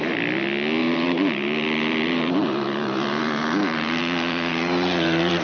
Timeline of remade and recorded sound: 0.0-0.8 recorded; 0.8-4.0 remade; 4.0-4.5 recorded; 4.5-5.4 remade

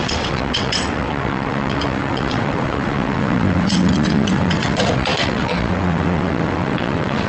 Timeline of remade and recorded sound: 0.0-7.3 remade

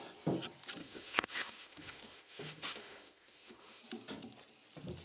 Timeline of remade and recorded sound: 0.0-0.8 recorded; 0.8-3.8 remade; 3.8-5.0 recorded

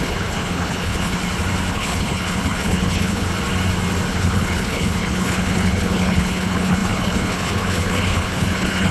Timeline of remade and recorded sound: 0.0-1.2 remade; 1.2-1.7 recorded; 1.7-3.3 remade; 3.3-4.1 recorded; 4.1-8.9 remade

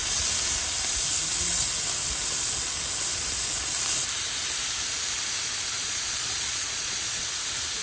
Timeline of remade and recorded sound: 0.0-5.8 recorded; 5.8-7.2 remade; 7.2-7.8 recorded

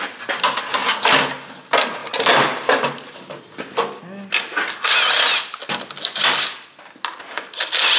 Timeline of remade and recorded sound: 0.0-8.0 recorded